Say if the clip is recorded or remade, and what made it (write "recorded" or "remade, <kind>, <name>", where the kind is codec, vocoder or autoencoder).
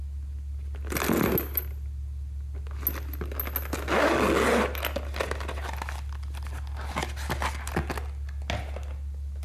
recorded